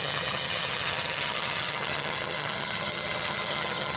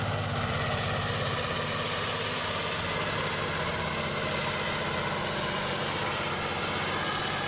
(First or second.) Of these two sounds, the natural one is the second